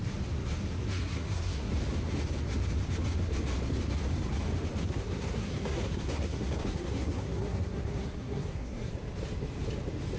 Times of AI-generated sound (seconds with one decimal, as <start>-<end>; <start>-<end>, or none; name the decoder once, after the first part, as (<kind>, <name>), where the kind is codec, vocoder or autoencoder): 0.9-1.7 (codec, SNAC); 4.8-8.9